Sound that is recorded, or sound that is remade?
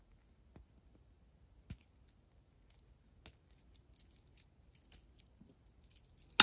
recorded